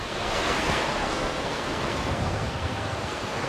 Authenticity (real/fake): fake